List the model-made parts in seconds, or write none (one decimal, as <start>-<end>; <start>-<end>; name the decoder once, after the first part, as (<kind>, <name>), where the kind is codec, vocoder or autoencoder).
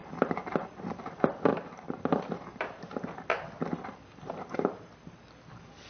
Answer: 0.0-1.0 (vocoder, BigVGAN v2); 1.5-2.0